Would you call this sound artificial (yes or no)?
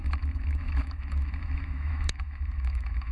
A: yes